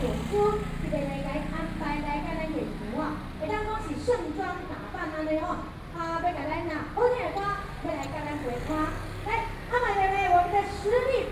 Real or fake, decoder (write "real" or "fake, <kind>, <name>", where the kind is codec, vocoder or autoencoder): real